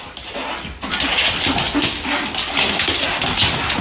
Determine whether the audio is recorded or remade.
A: recorded